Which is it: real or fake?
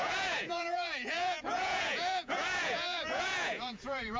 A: fake